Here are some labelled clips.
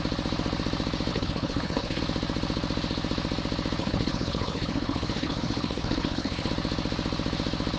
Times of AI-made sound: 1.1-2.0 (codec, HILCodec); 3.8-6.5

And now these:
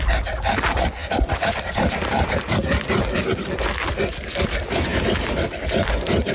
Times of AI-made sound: none

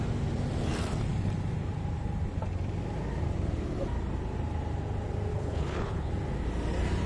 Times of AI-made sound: 5.3-6.1 (codec, HILCodec)

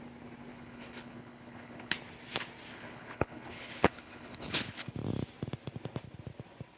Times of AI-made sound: 0.5-1.9 (codec, HILCodec); 2.7-4.9

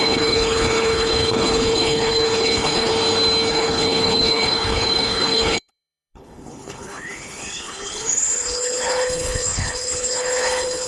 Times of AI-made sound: 0.0-2.9 (codec, HILCodec); 3.5-10.9

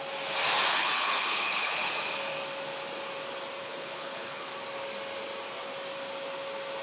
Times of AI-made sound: 0.7-1.9 (codec, HILCodec); 3.6-4.5

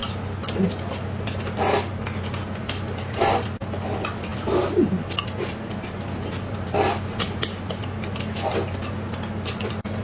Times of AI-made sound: none

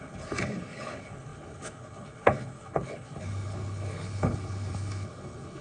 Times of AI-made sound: 0.0-5.6 (codec, HILCodec)